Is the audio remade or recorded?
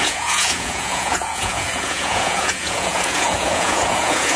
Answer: remade